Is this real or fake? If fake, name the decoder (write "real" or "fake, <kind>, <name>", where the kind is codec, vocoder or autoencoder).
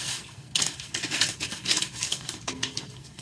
fake, codec, SNAC